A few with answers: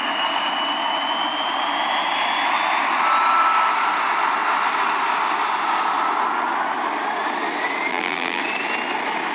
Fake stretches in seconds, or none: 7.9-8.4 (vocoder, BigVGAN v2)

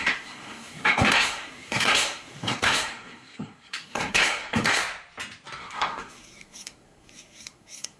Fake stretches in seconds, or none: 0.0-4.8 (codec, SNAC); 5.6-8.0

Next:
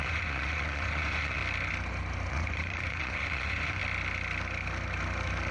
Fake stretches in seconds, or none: 0.0-1.4 (vocoder, Vocos); 2.3-3.8

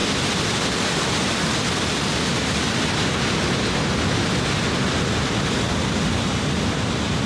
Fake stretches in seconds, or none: none

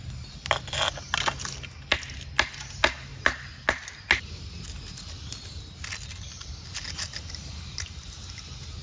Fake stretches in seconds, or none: none

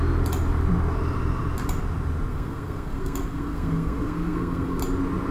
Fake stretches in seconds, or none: 2.3-4.8 (codec, SNAC)